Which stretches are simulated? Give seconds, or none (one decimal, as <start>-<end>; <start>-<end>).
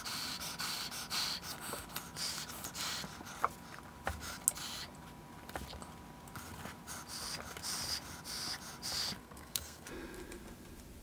9.2-9.9